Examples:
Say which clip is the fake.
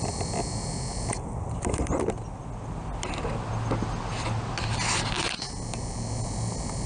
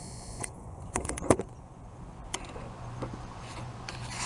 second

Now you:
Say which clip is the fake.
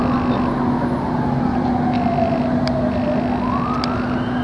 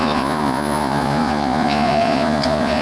second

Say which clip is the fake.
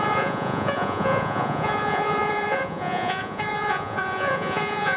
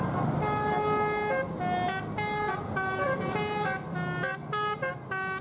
first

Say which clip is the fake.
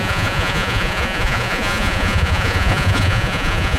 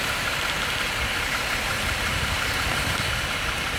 first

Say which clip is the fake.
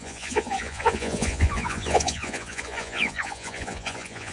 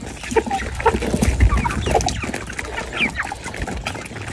first